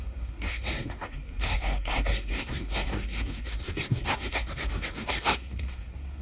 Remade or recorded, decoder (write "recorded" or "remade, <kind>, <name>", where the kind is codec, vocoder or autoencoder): remade, codec, SNAC